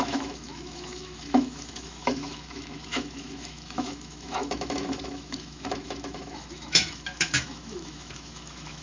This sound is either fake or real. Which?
fake